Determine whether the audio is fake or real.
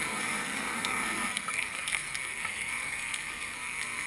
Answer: fake